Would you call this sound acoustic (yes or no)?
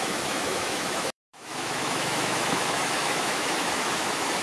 no